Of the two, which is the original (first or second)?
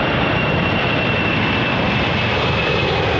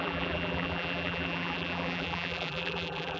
first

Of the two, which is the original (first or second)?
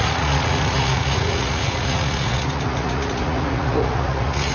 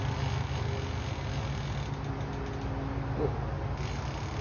second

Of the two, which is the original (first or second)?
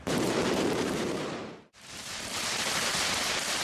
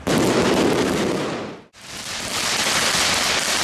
second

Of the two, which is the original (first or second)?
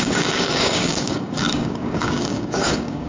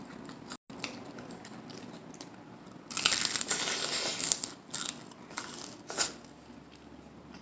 second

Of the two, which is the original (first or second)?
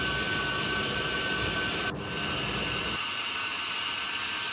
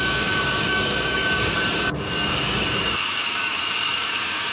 first